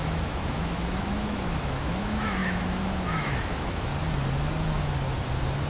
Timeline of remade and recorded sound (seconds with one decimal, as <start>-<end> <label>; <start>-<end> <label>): 0.0-3.9 remade; 3.9-5.7 recorded